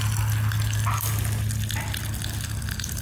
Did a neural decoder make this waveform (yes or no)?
no